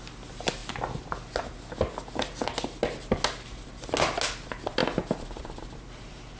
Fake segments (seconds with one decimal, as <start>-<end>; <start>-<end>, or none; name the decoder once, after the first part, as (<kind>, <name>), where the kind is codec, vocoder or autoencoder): none